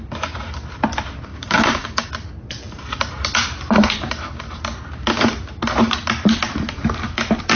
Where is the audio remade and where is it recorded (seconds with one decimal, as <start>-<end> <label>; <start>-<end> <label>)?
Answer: 0.0-1.3 recorded; 1.3-2.1 remade; 2.1-7.6 recorded